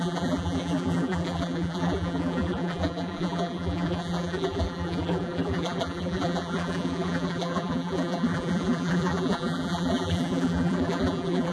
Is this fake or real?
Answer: fake